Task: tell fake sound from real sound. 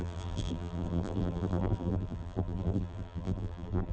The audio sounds fake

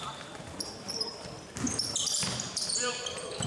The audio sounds fake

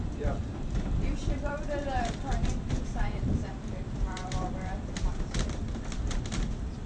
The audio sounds fake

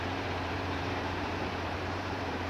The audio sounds fake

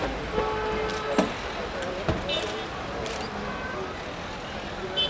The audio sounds real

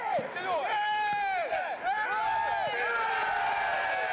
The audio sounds real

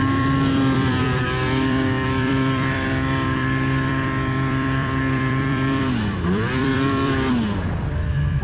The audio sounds fake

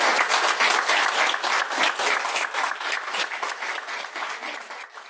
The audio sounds real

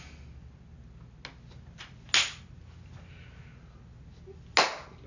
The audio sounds real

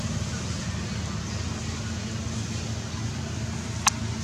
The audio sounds real